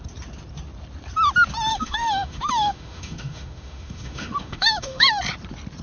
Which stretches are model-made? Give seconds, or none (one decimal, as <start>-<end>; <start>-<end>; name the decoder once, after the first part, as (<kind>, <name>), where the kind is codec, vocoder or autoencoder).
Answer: 1.7-5.2 (autoencoder, DAC-VAE)